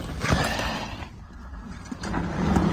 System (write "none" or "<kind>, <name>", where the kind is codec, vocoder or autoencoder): none